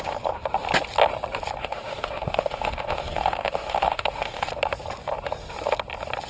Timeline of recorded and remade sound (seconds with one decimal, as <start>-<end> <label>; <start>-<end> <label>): 0.0-1.6 recorded; 1.6-4.5 remade; 4.5-6.3 recorded